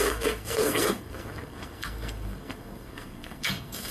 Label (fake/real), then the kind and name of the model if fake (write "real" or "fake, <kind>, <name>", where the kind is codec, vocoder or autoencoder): fake, codec, SNAC